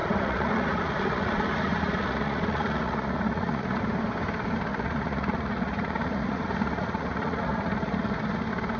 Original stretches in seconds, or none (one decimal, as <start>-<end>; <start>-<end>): 3.8-4.7; 8.1-8.8